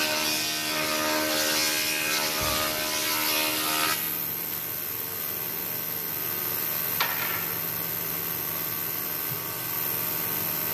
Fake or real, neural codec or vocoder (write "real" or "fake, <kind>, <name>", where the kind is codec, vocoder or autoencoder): real